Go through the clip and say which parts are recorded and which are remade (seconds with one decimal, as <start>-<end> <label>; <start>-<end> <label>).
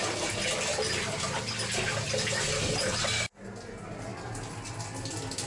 0.0-5.5 recorded